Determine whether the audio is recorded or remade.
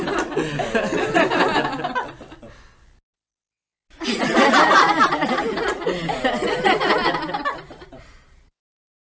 recorded